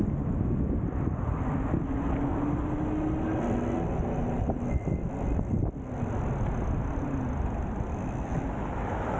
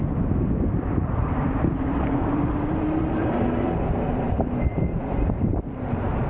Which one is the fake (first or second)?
second